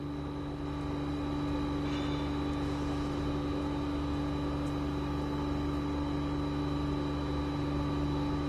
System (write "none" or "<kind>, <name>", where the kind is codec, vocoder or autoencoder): none